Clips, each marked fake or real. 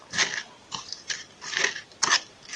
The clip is real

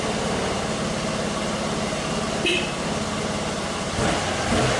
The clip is real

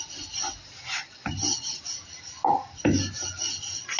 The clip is real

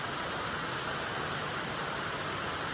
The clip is real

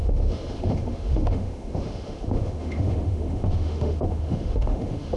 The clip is fake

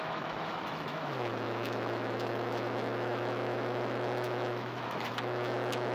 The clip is fake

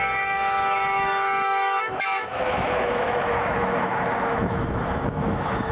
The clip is fake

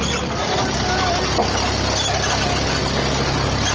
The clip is real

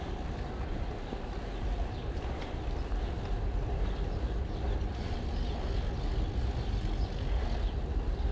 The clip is real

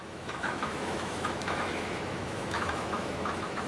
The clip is fake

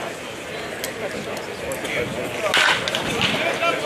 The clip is real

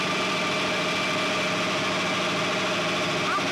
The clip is real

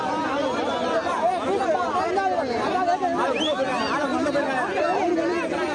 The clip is real